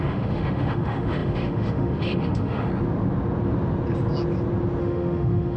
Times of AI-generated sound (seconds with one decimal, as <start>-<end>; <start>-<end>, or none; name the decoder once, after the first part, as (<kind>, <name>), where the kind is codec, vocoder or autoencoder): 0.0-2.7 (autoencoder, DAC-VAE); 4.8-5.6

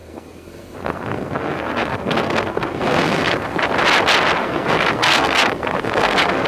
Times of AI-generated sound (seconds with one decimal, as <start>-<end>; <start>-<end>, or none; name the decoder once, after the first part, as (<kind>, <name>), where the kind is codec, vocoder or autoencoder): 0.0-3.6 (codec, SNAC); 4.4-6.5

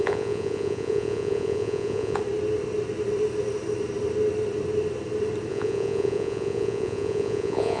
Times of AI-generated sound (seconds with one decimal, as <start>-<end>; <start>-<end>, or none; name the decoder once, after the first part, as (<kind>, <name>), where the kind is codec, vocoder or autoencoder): 0.0-2.2 (vocoder, Vocos); 5.5-7.8